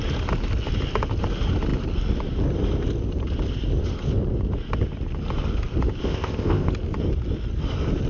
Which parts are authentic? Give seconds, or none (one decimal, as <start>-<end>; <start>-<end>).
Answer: 0.0-6.0; 6.7-8.1